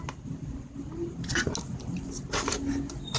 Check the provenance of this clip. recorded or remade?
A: recorded